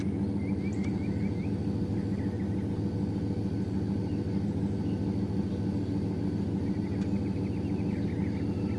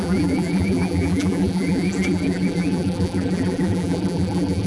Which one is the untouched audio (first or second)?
first